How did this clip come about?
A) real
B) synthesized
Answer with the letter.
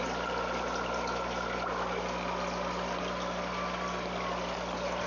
A